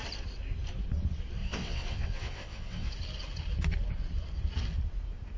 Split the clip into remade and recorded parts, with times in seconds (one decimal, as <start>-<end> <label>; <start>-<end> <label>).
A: 0.0-1.4 recorded; 1.4-2.9 remade; 2.9-5.4 recorded